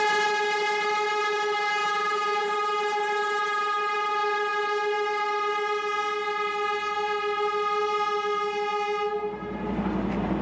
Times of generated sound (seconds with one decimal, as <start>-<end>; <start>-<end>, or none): 1.8-2.5